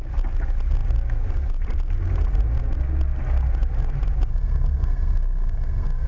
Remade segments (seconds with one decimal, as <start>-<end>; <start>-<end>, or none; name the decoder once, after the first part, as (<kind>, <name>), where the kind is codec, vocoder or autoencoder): 4.3-6.1 (codec, SNAC)